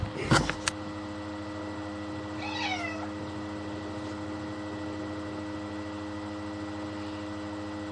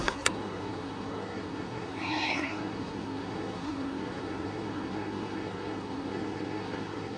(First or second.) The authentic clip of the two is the first